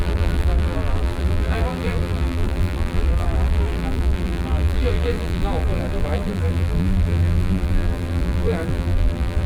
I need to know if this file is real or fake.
fake